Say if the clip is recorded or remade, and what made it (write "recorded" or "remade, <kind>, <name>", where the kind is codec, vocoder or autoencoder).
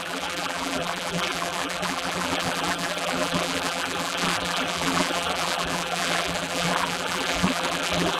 remade, vocoder, BigVGAN v2